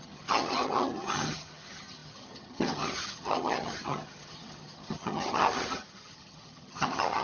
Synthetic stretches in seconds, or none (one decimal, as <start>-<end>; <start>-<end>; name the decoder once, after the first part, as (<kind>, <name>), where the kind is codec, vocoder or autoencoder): 0.0-7.2 (vocoder, HiFi-GAN)

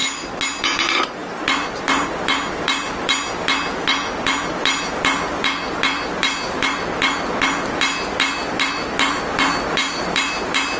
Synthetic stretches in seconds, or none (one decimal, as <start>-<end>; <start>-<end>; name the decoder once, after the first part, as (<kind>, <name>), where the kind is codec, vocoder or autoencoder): none